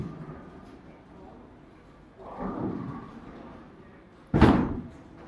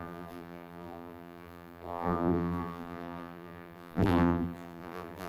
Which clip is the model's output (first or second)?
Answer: second